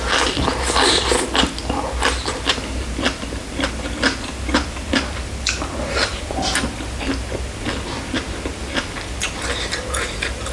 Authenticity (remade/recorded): recorded